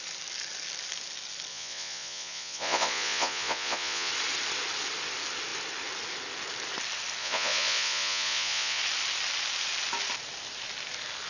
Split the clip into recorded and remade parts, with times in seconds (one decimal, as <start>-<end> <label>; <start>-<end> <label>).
0.0-1.5 recorded; 1.5-4.1 remade; 4.1-7.2 recorded; 7.2-8.8 remade; 8.8-11.3 recorded